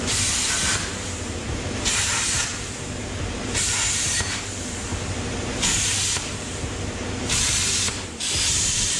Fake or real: fake